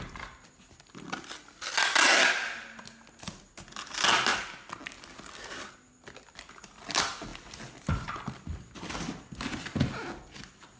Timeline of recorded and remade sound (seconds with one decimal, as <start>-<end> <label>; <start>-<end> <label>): 0.0-10.8 recorded